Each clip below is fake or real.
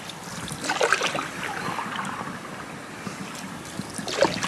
real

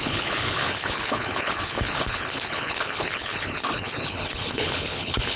fake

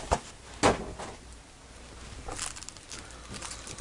real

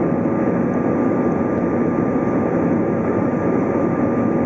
real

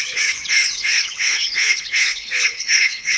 fake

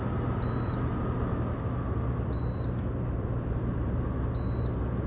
real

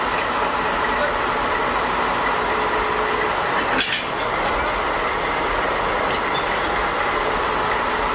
real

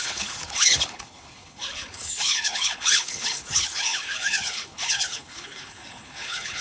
fake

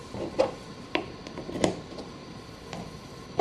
real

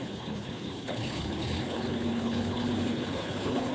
fake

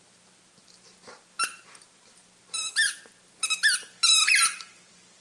real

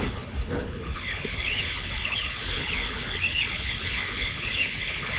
fake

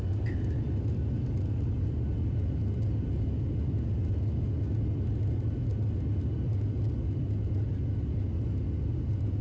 real